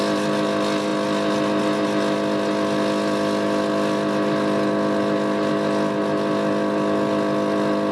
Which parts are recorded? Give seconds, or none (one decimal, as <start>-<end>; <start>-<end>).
0.0-7.9